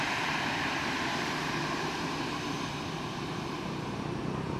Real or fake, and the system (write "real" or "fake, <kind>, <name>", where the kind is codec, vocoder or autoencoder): fake, vocoder, BigVGAN v2